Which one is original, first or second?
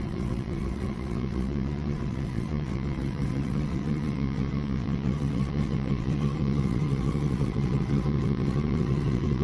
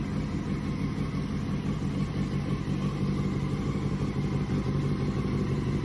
second